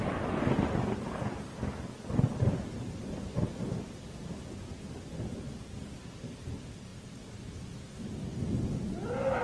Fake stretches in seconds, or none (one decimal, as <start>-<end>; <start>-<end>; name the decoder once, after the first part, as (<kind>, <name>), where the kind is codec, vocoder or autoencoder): none